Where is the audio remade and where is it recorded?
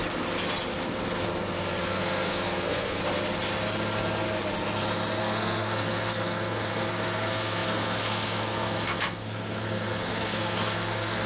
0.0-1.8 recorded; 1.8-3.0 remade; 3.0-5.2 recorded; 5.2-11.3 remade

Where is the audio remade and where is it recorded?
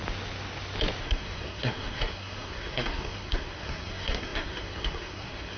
0.0-1.0 recorded; 1.0-5.6 remade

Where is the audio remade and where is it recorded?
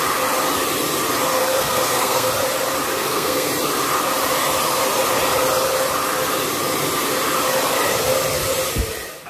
0.0-1.4 recorded; 1.4-2.3 remade; 2.3-3.0 recorded; 3.0-3.5 remade; 3.5-9.3 recorded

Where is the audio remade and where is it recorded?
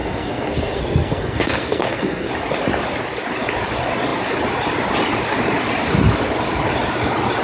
0.0-2.3 remade; 2.3-7.4 recorded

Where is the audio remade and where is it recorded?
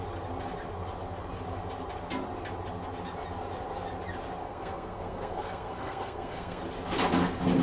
0.0-4.4 recorded; 4.4-6.6 remade; 6.6-7.6 recorded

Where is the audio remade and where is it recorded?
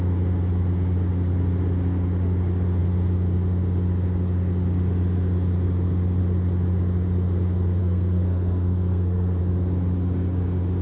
0.0-7.8 recorded; 7.8-9.4 remade; 9.4-10.8 recorded